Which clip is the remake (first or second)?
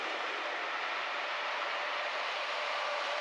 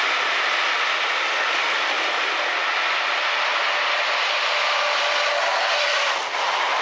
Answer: first